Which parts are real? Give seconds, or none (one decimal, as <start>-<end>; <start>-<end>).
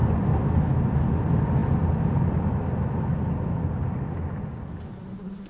0.0-5.5